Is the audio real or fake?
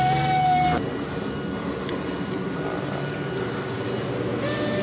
real